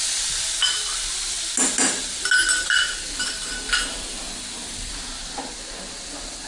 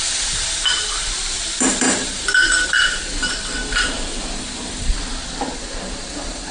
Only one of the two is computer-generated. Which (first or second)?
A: second